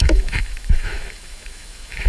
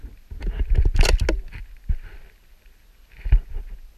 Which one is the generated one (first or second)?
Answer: first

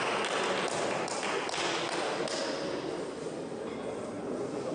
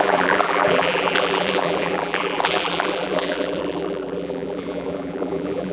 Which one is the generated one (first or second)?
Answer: second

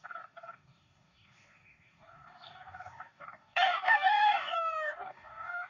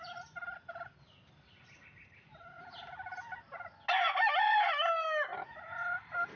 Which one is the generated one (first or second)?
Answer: first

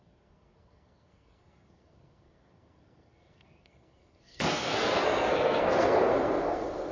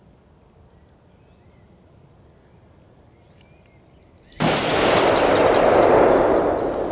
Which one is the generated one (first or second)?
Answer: first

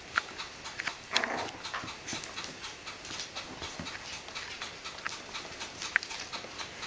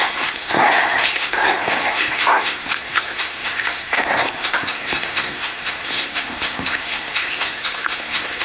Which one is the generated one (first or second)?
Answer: second